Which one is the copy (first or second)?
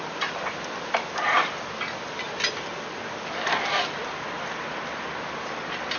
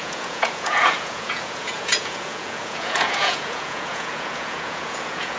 second